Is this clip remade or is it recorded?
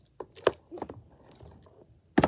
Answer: recorded